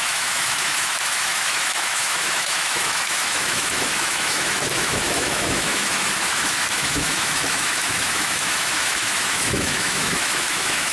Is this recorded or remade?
remade